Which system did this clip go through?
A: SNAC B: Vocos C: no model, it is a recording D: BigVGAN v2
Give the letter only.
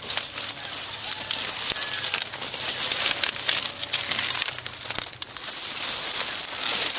C